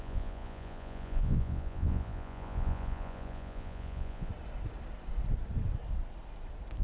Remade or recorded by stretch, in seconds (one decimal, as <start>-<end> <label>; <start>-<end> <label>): 0.0-4.3 remade; 4.3-6.8 recorded